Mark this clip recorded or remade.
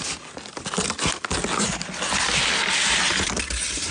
recorded